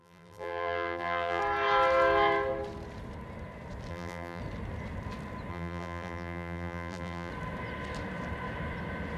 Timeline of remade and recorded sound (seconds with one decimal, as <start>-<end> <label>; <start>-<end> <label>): 0.0-1.4 remade; 1.4-3.9 recorded; 3.9-4.4 remade; 4.4-5.5 recorded; 5.5-7.3 remade; 7.3-9.2 recorded